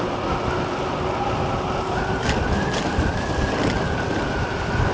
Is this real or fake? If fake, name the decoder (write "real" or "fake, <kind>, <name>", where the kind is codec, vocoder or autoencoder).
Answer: real